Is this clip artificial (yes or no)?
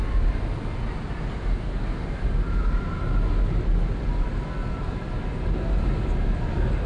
no